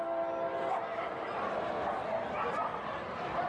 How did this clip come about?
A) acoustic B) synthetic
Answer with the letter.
A